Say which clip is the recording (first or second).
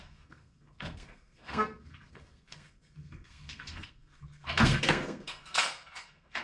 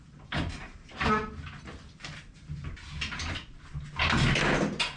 second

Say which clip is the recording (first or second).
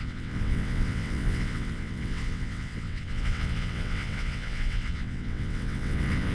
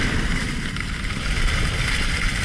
second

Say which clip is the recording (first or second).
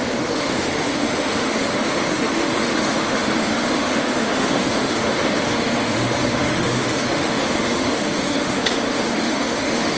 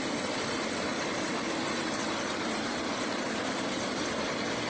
second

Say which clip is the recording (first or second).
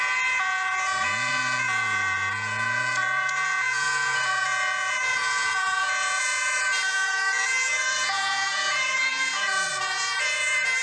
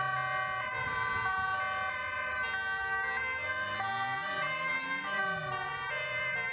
second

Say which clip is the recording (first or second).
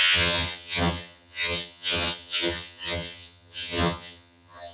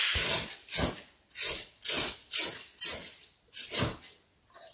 second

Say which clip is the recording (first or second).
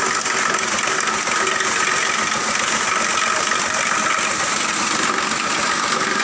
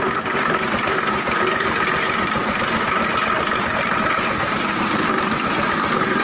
first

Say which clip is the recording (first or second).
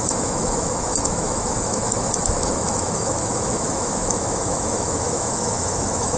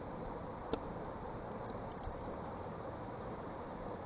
second